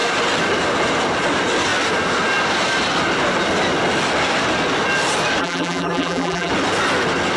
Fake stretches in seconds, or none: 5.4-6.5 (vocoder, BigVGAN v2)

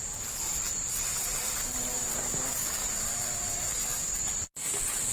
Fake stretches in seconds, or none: 0.7-2.3 (vocoder, BigVGAN v2); 2.8-3.7

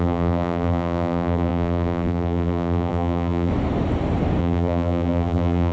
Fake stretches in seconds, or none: 0.0-3.5 (vocoder, BigVGAN v2); 4.4-5.7